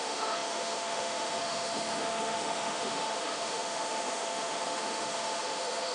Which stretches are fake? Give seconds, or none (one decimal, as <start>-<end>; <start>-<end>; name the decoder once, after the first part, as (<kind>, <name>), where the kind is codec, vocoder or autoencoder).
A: 0.0-5.9 (autoencoder, DAC-VAE)